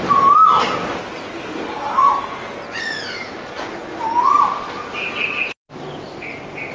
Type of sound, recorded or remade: recorded